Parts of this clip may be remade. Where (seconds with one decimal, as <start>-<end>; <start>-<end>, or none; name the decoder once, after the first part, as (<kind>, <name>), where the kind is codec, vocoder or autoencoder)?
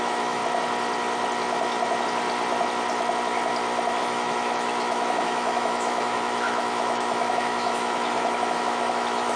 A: 0.0-0.4 (autoencoder, DAC-VAE); 4.0-9.4